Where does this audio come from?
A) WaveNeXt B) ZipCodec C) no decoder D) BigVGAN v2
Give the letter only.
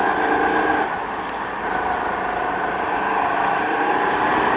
C